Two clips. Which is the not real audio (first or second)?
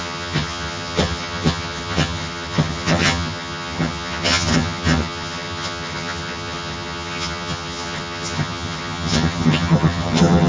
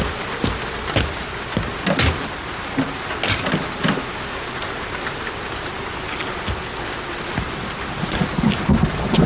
first